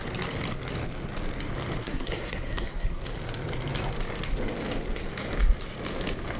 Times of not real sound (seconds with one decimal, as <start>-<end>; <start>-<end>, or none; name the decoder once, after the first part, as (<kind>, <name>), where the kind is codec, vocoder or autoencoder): 1.8-3.0 (codec, SNAC)